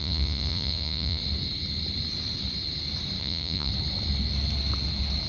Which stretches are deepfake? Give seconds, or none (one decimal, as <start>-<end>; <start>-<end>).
0.0-1.2; 3.2-3.7